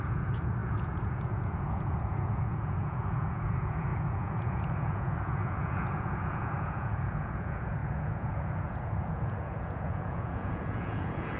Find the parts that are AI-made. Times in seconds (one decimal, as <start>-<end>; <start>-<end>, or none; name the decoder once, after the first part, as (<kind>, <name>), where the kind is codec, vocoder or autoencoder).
0.0-11.4 (vocoder, Vocos)

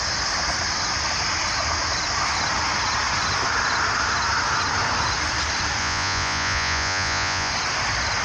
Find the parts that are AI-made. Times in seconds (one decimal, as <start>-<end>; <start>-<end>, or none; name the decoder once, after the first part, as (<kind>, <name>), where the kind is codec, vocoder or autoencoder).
5.8-7.5 (vocoder, Vocos)

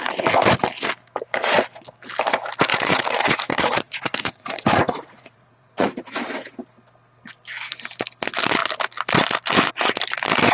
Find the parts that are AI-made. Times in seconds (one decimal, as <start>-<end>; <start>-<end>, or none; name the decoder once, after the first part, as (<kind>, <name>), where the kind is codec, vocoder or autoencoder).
2.7-6.2 (vocoder, Vocos)

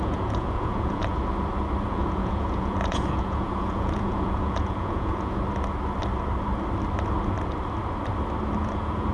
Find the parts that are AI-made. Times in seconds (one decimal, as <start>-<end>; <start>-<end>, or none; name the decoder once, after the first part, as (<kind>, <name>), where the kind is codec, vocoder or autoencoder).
0.0-1.1 (vocoder, Vocos); 1.9-5.4; 8.6-9.1

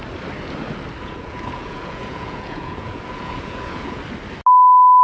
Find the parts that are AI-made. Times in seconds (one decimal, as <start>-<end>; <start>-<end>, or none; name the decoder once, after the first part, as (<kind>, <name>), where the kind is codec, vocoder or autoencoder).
1.0-4.0 (vocoder, Vocos)

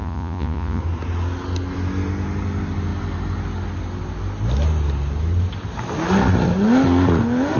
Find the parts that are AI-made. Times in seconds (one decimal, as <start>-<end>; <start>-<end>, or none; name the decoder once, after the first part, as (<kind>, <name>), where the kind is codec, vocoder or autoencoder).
0.0-0.8 (vocoder, Vocos)

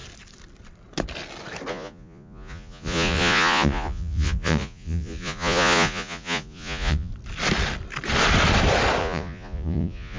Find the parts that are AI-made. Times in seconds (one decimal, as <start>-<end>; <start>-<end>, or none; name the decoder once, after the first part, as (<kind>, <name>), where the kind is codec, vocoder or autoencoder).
1.7-7.1 (vocoder, Vocos); 9.0-10.2